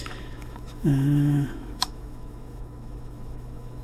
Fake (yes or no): yes